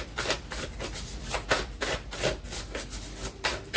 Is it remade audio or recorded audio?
recorded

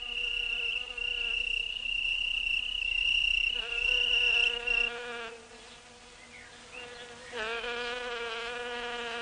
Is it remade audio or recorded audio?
recorded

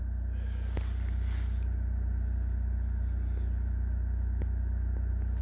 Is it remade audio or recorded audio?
recorded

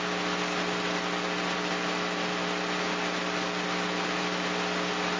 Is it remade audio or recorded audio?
recorded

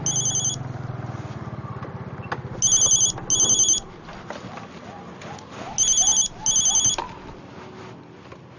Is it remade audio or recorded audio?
recorded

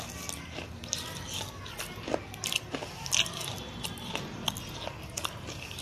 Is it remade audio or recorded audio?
recorded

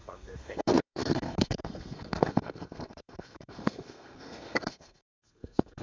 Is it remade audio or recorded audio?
remade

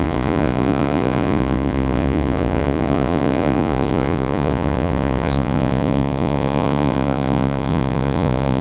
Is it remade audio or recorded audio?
remade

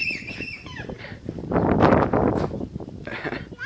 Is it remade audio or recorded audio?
remade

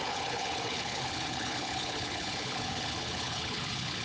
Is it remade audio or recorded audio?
remade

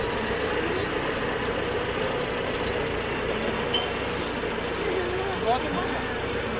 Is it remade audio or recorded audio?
recorded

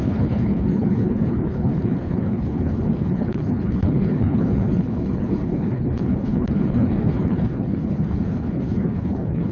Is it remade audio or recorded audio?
remade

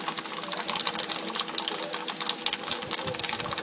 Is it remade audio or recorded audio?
recorded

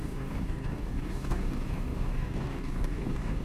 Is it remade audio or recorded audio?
remade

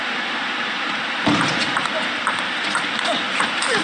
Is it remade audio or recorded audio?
remade